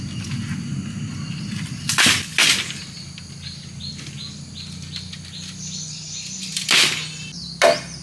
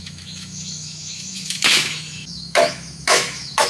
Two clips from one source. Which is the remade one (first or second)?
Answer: second